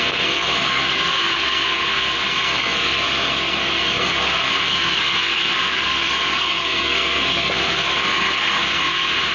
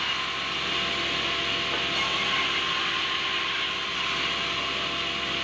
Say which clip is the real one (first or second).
second